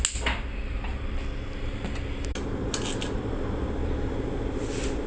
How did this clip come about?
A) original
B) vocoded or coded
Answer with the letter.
A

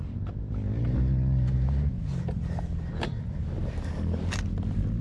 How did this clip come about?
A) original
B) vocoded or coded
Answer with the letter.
A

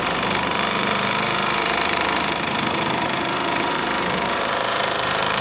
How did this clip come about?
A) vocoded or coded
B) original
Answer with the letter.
A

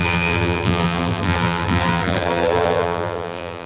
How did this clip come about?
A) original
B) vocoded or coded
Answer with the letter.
B